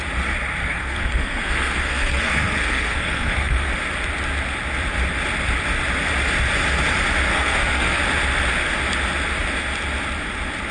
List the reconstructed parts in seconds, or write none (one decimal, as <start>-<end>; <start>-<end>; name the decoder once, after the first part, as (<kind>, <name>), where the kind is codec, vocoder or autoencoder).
0.6-3.7 (codec, SNAC); 7.3-8.0